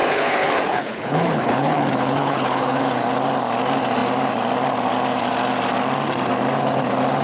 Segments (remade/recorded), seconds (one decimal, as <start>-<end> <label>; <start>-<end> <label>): 0.0-2.8 remade; 2.8-7.2 recorded

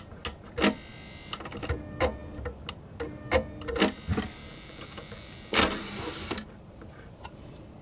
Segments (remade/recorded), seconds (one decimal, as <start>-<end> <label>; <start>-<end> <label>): 0.0-4.4 recorded; 4.4-7.8 remade

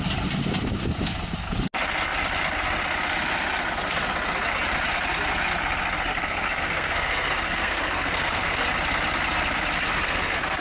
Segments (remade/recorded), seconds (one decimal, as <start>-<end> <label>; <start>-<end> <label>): 0.0-6.1 recorded; 6.1-8.6 remade; 8.6-9.9 recorded; 9.9-10.6 remade

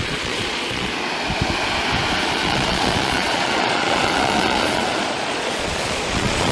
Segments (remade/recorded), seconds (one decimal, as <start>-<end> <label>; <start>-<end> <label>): 0.0-0.9 remade; 0.9-2.2 recorded; 2.2-6.5 remade

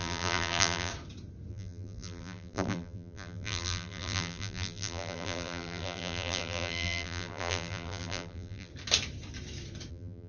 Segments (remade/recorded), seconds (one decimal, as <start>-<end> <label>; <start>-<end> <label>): 0.0-0.9 remade; 0.9-1.5 recorded; 1.5-8.7 remade; 8.7-9.9 recorded; 9.9-10.3 remade

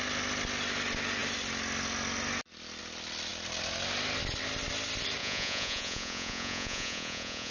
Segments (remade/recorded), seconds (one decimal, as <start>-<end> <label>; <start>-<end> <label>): 0.0-5.2 recorded; 5.2-7.5 remade

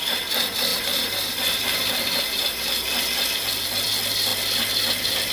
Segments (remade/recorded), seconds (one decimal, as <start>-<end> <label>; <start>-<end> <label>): 0.0-0.7 recorded; 0.7-3.0 remade; 3.0-4.3 recorded; 4.3-5.3 remade